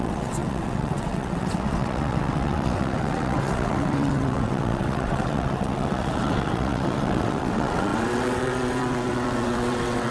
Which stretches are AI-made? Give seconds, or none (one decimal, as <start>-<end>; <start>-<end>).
0.0-10.1